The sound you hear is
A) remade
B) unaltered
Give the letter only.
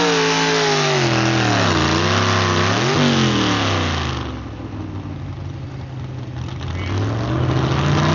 B